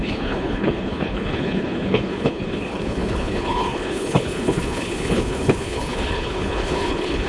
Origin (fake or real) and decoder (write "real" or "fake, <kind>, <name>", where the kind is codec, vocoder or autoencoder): fake, codec, HILCodec